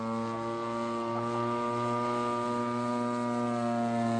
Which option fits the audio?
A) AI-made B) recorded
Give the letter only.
B